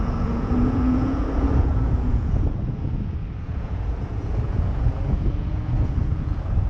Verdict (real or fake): fake